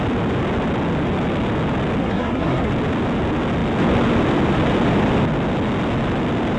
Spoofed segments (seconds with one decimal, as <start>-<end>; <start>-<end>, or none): 2.0-2.7